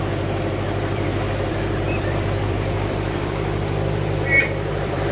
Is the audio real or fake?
fake